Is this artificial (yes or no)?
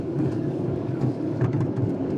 yes